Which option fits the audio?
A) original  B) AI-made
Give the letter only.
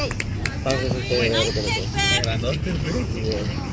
A